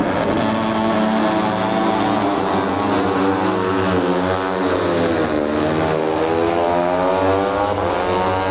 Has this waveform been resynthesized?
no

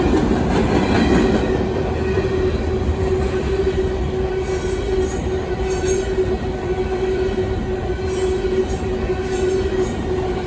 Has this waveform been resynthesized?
no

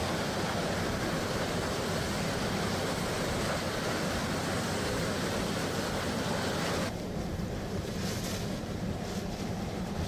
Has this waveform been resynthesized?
no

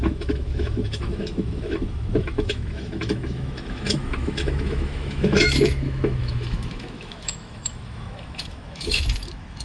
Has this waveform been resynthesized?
yes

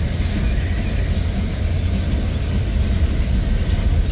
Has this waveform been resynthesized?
no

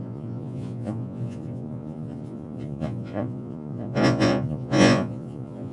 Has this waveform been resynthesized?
yes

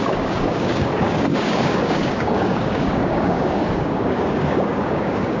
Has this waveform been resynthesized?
yes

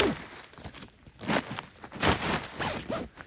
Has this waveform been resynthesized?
no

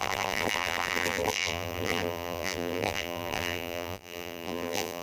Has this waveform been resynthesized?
yes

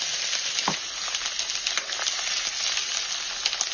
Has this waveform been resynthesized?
no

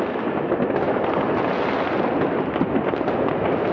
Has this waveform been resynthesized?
no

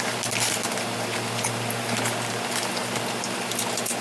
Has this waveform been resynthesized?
no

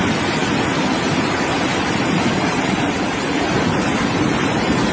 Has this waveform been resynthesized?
yes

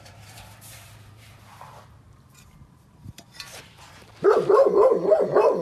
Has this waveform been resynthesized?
yes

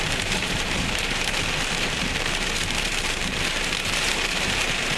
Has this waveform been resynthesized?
yes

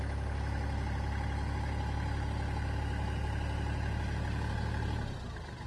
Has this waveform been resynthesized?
no